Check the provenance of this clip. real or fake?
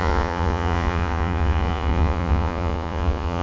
fake